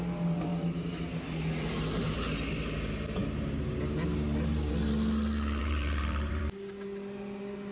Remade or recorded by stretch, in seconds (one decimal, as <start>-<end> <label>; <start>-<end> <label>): 0.0-5.6 recorded; 5.6-6.4 remade; 6.4-7.7 recorded